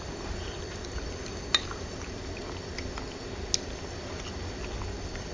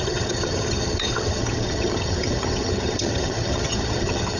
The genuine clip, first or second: first